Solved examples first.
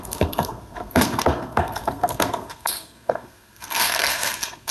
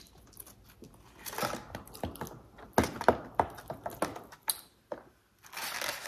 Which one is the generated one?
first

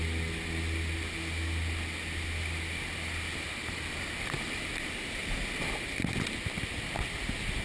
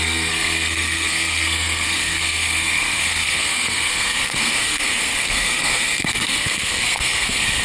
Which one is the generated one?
second